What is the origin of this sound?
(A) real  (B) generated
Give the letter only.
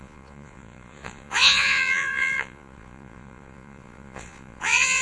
B